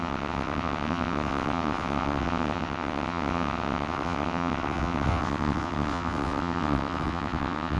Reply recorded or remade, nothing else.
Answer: remade